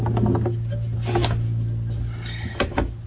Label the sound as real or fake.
real